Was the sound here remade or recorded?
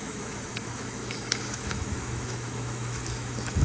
remade